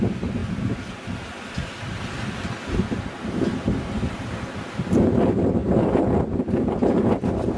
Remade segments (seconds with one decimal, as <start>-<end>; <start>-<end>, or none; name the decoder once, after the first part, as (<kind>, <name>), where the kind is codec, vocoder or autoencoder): 0.4-5.0 (vocoder, BigVGAN v2); 5.6-6.2